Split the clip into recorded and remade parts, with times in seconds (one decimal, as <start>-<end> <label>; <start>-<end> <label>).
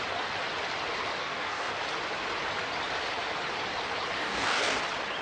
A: 0.0-1.2 recorded; 1.2-1.7 remade; 1.7-4.2 recorded; 4.2-4.8 remade; 4.8-5.2 recorded